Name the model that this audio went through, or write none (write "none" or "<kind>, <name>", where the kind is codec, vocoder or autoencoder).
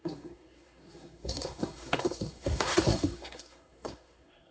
codec, SNAC